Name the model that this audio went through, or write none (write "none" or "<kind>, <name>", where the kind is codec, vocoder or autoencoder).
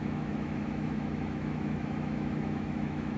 autoencoder, DAC-VAE